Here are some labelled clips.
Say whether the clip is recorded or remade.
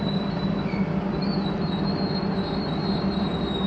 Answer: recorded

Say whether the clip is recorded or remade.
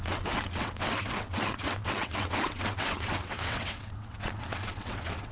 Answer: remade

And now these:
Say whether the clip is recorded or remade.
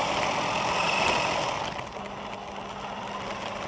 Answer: recorded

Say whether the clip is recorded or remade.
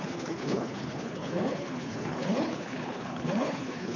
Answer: remade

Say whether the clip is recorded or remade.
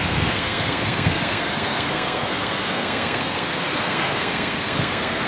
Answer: remade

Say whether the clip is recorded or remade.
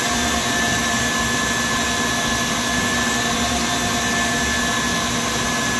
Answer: recorded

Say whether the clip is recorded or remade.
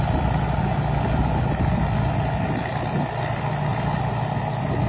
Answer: recorded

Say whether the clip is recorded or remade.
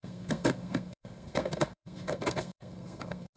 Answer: remade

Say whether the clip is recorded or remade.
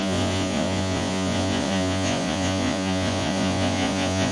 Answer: remade